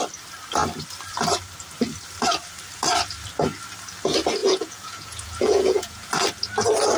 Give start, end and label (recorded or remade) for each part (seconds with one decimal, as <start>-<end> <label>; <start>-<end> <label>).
0.0-4.4 recorded; 4.4-6.1 remade; 6.1-7.0 recorded